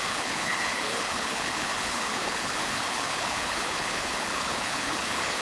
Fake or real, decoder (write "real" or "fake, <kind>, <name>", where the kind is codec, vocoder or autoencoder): fake, codec, HILCodec